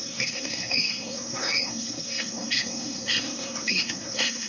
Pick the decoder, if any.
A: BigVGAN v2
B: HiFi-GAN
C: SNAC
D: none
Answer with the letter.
C